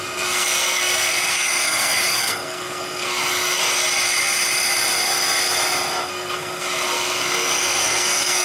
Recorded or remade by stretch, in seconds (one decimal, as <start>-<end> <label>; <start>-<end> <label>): 0.0-3.6 remade; 3.6-6.0 recorded; 6.0-8.4 remade